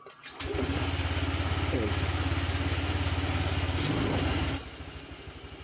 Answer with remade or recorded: recorded